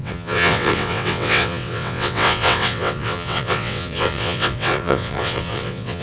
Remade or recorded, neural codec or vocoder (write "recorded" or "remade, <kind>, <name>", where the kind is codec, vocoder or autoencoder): remade, vocoder, WaveNeXt